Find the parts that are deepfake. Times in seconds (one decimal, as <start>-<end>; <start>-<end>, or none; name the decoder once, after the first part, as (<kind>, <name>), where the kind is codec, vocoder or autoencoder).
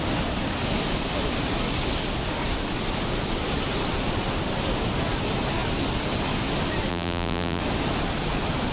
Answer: 6.9-7.6 (vocoder, BigVGAN v2)